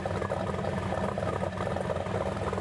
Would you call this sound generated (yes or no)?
no